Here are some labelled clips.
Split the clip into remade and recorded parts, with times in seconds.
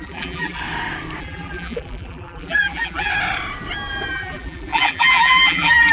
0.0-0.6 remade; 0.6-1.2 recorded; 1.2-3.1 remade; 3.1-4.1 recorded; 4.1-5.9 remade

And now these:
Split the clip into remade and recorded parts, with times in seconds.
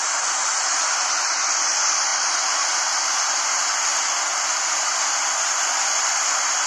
0.0-1.6 remade; 1.6-2.1 recorded; 2.1-3.2 remade; 3.2-6.7 recorded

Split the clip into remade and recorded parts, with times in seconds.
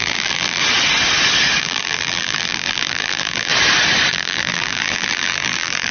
0.0-0.6 remade; 0.6-1.6 recorded; 1.6-3.5 remade; 3.5-4.1 recorded; 4.1-5.9 remade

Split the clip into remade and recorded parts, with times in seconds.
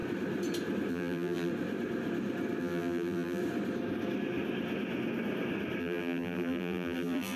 0.0-0.9 recorded; 0.9-1.5 remade; 1.5-2.6 recorded; 2.6-3.4 remade; 3.4-5.8 recorded; 5.8-7.4 remade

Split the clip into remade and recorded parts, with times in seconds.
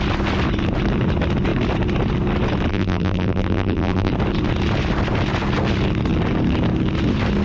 0.0-2.7 recorded; 2.7-4.1 remade; 4.1-7.4 recorded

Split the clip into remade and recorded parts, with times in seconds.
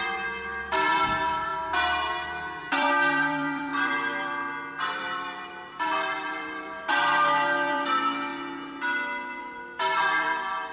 0.0-1.5 remade; 1.5-2.6 recorded; 2.6-8.3 remade; 8.3-9.4 recorded; 9.4-10.7 remade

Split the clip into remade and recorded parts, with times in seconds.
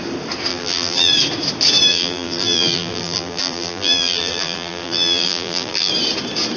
0.0-0.5 recorded; 0.5-1.1 remade; 1.1-1.9 recorded; 1.9-5.9 remade; 5.9-6.6 recorded